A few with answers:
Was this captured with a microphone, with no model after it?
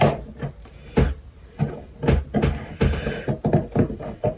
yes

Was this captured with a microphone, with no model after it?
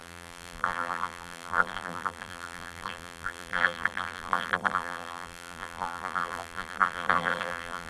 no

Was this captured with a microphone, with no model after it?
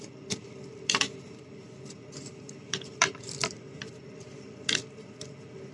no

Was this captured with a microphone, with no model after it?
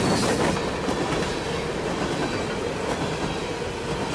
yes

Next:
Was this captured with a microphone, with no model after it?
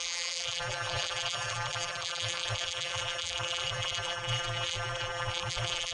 no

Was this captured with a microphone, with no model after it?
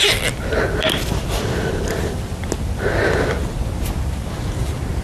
no